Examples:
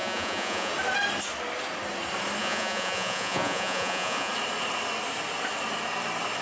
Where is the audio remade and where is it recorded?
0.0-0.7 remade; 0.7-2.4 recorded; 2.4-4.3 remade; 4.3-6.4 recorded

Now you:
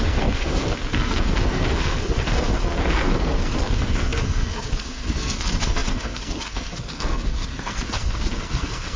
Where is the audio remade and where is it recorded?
0.0-9.0 remade

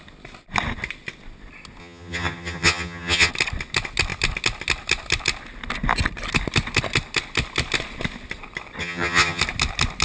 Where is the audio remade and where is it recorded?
0.0-1.8 recorded; 1.8-3.3 remade; 3.3-8.8 recorded; 8.8-9.4 remade; 9.4-10.0 recorded

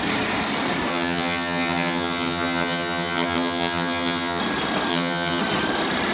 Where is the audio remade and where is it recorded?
0.0-0.9 recorded; 0.9-4.4 remade; 4.4-4.9 recorded; 4.9-5.4 remade; 5.4-6.1 recorded

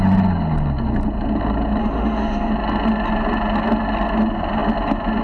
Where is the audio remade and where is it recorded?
0.0-1.8 recorded; 1.8-2.5 remade; 2.5-5.2 recorded

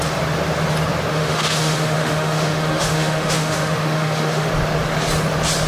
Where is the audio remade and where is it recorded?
0.0-1.1 recorded; 1.1-4.5 remade; 4.5-5.7 recorded

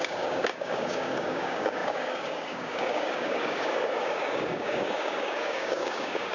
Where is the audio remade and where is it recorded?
0.0-6.3 remade